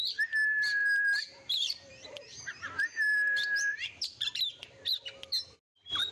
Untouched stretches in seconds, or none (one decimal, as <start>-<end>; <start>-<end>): 0.0-0.8; 4.5-6.1